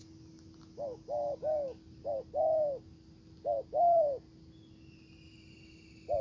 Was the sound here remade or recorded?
recorded